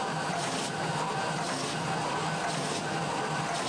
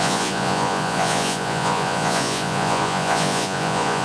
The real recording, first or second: first